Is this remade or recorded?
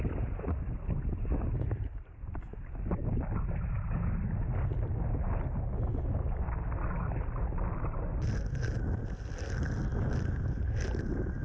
recorded